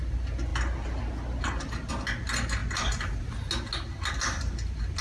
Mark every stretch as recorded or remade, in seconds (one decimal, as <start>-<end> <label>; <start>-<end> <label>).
0.0-5.0 recorded